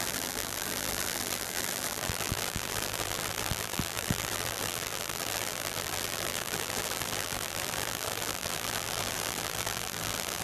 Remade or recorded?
remade